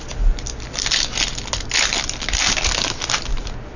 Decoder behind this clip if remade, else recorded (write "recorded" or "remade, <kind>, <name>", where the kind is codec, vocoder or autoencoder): recorded